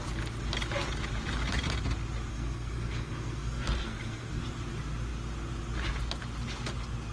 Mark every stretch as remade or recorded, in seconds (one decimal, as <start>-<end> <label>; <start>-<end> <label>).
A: 0.0-2.3 recorded; 2.3-4.4 remade; 4.4-7.1 recorded